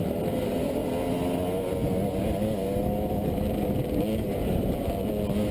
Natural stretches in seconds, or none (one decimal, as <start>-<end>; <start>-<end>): 0.0-5.5